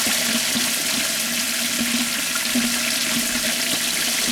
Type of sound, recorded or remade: recorded